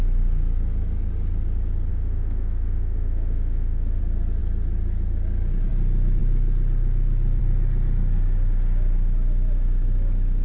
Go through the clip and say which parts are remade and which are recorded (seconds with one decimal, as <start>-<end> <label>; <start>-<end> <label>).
0.0-1.9 recorded; 1.9-4.0 remade; 4.0-10.4 recorded